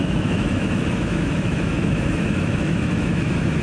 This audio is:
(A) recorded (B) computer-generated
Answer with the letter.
B